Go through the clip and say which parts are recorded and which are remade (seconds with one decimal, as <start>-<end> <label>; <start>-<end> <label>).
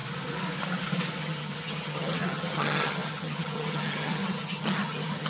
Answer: 0.0-1.2 recorded; 1.2-5.3 remade